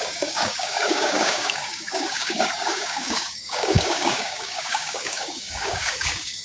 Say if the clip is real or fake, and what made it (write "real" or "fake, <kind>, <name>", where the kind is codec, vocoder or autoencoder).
fake, codec, DAC